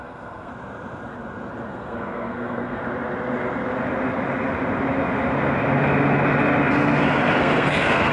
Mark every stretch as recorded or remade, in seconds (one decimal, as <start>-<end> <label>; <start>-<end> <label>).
0.0-0.5 remade; 0.5-1.7 recorded; 1.7-2.8 remade; 2.8-7.4 recorded; 7.4-8.1 remade